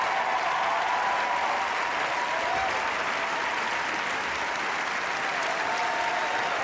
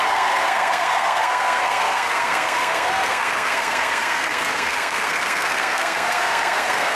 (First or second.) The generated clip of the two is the second